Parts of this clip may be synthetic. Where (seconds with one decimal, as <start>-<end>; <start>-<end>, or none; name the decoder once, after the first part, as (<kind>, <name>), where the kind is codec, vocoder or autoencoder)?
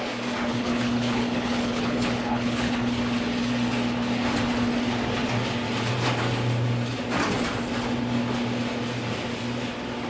0.5-3.0 (codec, HILCodec)